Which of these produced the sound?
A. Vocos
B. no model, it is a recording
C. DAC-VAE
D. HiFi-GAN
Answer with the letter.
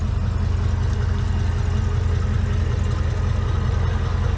B